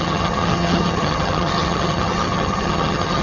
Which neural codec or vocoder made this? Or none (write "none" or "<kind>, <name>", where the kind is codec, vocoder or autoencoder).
vocoder, HiFi-GAN